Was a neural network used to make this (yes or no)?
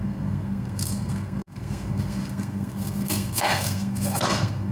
yes